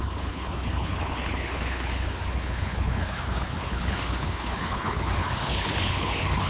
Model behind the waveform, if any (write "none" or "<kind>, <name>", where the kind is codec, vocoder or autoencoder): codec, HILCodec